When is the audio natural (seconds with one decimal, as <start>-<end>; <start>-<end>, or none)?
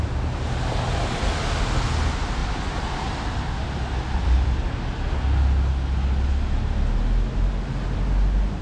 0.0-8.6